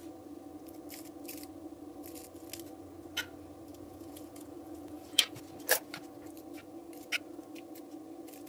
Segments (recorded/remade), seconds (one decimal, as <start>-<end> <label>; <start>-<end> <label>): 0.0-3.7 recorded; 3.7-5.4 remade; 5.4-8.5 recorded